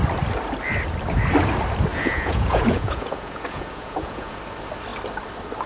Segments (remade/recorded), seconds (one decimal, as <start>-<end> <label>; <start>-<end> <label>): 0.0-1.9 recorded; 1.9-4.4 remade; 4.4-5.7 recorded